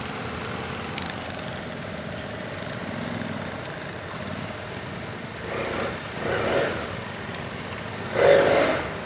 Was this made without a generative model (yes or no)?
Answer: yes